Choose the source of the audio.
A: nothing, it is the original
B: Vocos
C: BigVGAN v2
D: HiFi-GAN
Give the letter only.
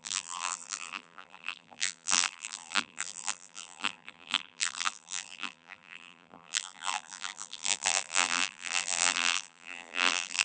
C